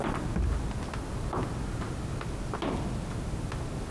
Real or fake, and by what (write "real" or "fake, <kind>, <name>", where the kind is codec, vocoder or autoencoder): real